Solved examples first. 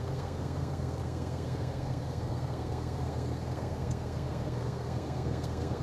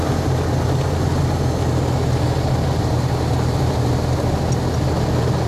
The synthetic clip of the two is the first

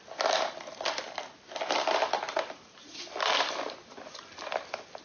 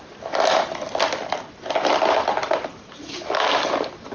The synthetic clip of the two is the second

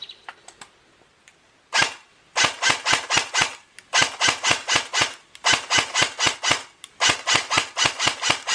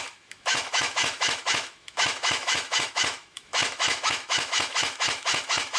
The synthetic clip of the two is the second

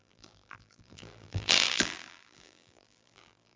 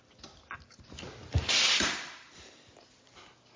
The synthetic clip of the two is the first